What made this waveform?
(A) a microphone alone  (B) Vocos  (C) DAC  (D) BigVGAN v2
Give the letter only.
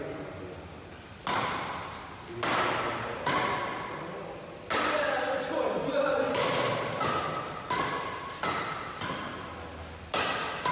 A